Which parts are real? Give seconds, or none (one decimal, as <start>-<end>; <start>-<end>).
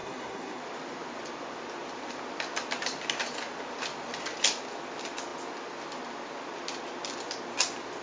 0.6-8.0